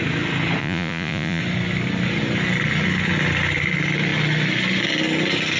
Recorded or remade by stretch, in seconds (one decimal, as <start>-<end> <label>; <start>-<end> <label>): 0.0-0.6 recorded; 0.6-1.4 remade; 1.4-5.6 recorded